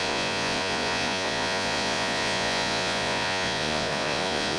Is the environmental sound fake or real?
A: fake